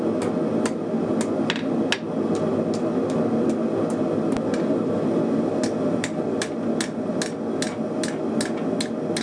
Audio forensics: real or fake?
real